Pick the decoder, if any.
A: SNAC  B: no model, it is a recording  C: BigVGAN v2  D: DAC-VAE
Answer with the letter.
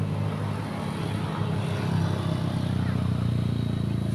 B